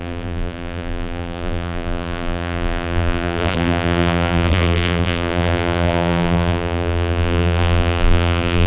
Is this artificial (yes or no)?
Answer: yes